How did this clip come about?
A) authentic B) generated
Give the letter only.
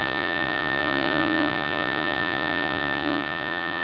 B